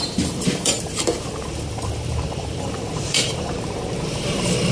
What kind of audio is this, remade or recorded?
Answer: remade